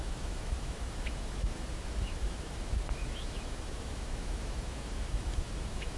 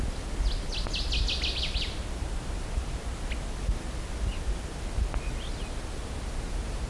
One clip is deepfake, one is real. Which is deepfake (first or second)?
first